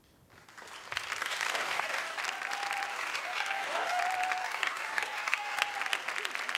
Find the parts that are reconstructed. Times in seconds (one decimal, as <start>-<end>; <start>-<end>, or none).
1.2-2.2; 2.9-4.0; 4.4-5.6